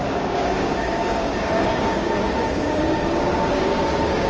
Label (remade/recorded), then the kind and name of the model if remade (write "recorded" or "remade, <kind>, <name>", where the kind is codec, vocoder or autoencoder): remade, codec, DAC